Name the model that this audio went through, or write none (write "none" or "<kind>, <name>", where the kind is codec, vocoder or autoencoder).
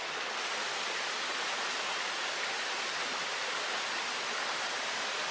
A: none